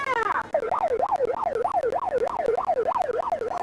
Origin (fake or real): real